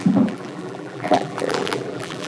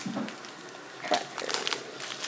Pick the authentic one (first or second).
second